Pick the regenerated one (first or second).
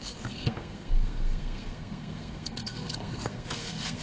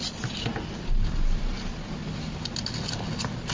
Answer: first